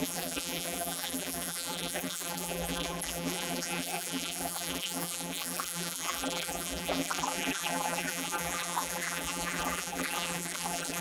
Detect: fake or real fake